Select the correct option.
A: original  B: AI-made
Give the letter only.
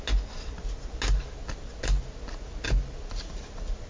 A